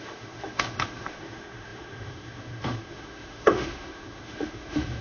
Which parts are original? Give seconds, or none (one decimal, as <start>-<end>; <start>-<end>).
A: none